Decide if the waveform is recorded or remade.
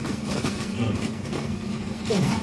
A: remade